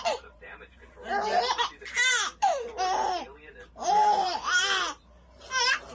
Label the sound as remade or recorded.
remade